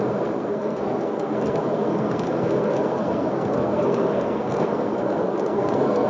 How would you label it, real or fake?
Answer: fake